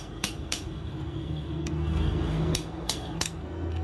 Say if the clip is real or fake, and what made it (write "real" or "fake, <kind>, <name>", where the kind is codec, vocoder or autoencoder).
fake, codec, SNAC